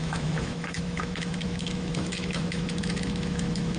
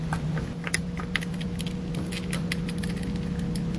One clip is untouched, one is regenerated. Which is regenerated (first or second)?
first